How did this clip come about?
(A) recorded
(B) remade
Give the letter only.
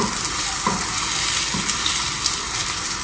A